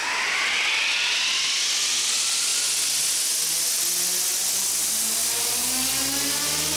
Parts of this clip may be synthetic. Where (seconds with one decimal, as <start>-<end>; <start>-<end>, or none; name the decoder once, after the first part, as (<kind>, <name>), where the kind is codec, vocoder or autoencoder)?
none

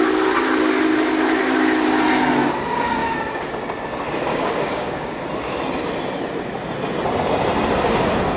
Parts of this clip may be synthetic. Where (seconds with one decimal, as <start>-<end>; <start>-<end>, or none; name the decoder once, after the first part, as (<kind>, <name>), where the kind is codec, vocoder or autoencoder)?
3.0-3.5 (codec, DAC); 4.3-5.2

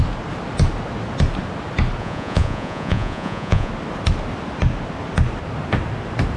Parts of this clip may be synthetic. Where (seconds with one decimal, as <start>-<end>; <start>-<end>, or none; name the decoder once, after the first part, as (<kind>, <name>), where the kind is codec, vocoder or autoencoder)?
2.0-3.7 (vocoder, Vocos)

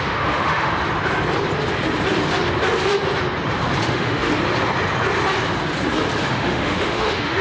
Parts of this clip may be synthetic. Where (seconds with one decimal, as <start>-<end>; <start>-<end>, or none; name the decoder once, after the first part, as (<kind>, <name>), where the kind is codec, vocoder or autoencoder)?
0.0-0.7 (autoencoder, DAC-VAE); 3.8-4.3; 6.3-7.4

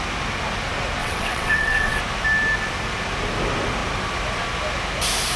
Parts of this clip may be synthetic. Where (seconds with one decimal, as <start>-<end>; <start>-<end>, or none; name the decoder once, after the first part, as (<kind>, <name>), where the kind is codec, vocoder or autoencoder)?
1.0-2.0 (vocoder, WaveNeXt)